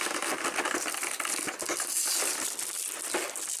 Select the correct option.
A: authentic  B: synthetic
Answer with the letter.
A